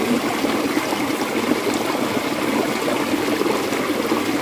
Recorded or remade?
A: recorded